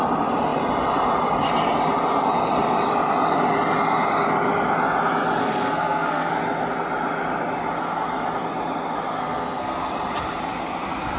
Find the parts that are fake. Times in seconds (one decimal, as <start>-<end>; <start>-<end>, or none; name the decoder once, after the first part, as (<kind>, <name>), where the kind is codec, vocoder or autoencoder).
5.4-6.3 (codec, SNAC); 9.2-9.9